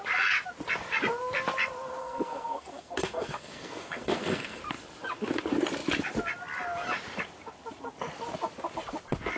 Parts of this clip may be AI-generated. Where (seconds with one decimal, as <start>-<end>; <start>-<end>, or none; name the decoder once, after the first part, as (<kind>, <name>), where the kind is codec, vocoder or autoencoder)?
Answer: 2.0-4.6 (codec, SNAC)